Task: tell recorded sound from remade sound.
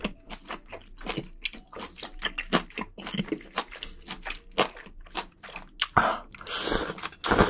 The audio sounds recorded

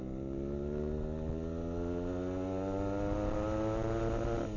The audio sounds recorded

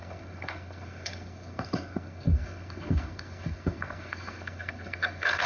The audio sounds remade